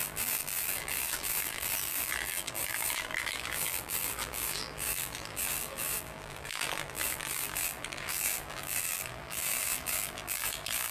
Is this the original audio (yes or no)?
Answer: no